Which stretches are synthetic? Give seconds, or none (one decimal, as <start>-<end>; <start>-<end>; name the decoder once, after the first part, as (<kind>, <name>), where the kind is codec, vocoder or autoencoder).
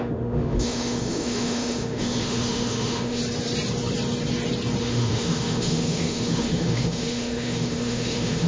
0.0-3.2 (autoencoder, DAC-VAE); 4.8-8.5